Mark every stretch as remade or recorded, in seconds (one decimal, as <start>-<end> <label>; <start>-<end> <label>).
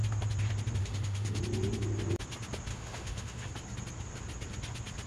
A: 0.0-0.8 recorded; 0.8-1.4 remade; 1.4-2.7 recorded; 2.7-3.5 remade; 3.5-5.1 recorded